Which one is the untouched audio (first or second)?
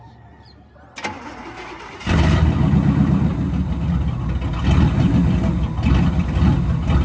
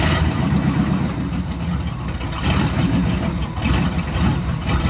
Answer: first